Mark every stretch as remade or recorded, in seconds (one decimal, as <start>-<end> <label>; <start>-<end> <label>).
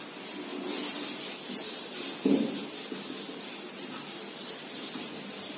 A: 0.0-5.6 recorded